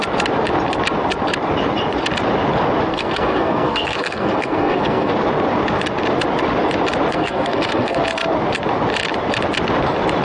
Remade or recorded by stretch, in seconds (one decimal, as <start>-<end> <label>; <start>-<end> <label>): 0.0-2.9 recorded; 2.9-5.1 remade; 5.1-7.1 recorded; 7.1-8.0 remade; 8.0-10.2 recorded